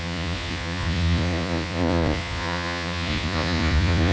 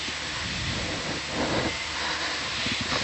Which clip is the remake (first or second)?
first